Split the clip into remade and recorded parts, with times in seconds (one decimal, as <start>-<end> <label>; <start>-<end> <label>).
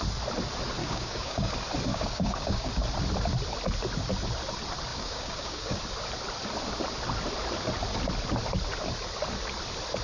0.0-0.8 recorded; 0.8-1.5 remade; 1.5-1.9 recorded; 1.9-2.7 remade; 2.7-4.9 recorded; 4.9-5.8 remade; 5.8-10.0 recorded